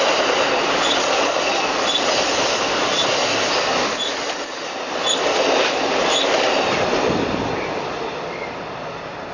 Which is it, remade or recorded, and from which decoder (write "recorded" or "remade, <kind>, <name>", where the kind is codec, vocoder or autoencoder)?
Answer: recorded